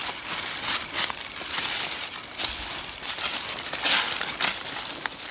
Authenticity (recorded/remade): recorded